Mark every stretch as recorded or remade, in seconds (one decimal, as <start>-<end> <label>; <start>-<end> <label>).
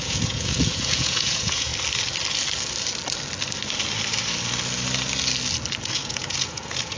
0.0-1.7 remade; 1.7-5.9 recorded; 5.9-7.0 remade